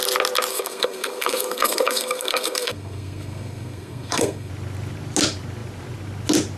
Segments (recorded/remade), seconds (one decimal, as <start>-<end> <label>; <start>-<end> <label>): 0.0-0.5 recorded; 0.5-4.5 remade; 4.5-6.6 recorded

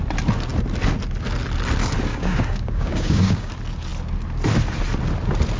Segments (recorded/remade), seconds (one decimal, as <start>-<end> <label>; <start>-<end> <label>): 0.0-2.1 recorded; 2.1-3.5 remade; 3.5-5.6 recorded